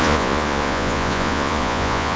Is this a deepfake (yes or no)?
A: yes